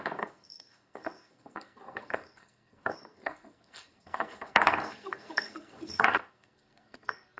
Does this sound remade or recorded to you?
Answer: remade